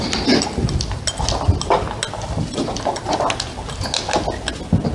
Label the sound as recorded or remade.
recorded